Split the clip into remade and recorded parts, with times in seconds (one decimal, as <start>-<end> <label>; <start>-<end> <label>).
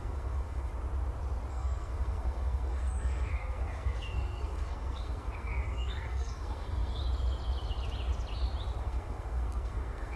0.0-0.7 remade; 0.7-1.5 recorded; 1.5-7.0 remade; 7.0-8.8 recorded; 8.8-10.2 remade